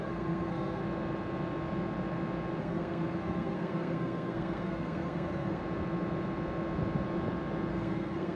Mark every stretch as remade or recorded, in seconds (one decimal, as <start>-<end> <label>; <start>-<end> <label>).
0.0-0.8 remade; 0.8-2.6 recorded; 2.6-5.6 remade; 5.6-7.7 recorded; 7.7-8.4 remade